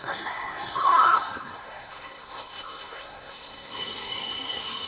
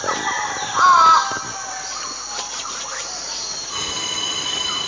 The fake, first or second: first